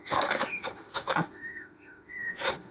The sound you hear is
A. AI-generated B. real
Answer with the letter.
A